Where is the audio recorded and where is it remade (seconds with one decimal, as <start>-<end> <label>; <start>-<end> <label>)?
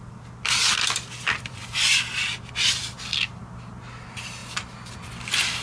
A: 0.0-4.4 recorded; 4.4-5.1 remade; 5.1-5.6 recorded